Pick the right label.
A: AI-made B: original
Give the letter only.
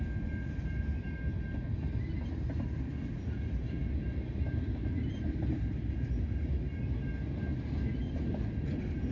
B